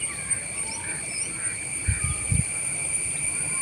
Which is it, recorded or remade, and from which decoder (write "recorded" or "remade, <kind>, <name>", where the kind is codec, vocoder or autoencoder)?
recorded